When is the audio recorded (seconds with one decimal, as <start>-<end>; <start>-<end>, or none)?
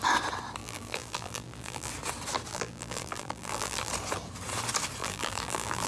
0.0-0.6; 1.9-2.5; 3.9-5.0